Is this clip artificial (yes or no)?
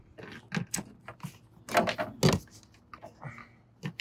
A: no